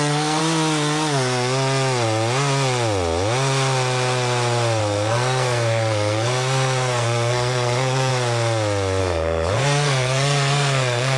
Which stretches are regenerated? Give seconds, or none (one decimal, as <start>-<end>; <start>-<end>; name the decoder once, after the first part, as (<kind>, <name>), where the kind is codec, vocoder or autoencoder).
0.0-0.4 (codec, SNAC); 4.8-8.1; 9.0-11.2